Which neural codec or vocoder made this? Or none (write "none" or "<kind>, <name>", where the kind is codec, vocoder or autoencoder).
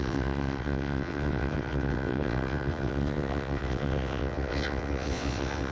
vocoder, WaveNeXt